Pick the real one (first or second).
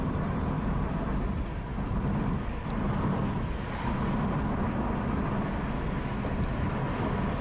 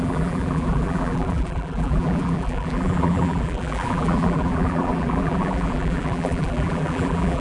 first